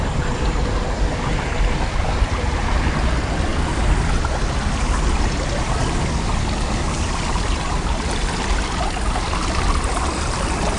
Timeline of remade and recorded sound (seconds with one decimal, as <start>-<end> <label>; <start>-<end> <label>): 0.0-10.8 recorded